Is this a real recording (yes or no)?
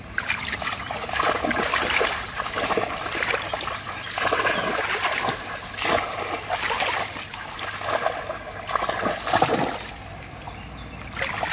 yes